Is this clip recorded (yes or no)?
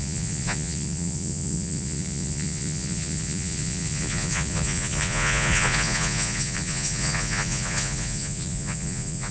no